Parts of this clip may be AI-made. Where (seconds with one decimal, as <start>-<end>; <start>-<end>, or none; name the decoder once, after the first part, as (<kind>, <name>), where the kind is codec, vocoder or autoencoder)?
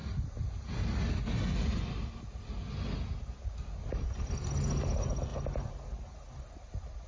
none